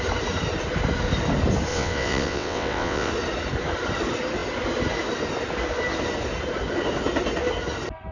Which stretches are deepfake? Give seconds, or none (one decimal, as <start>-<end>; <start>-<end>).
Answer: 1.7-3.1